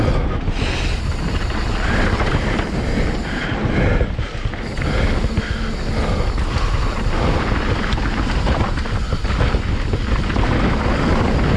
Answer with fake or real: real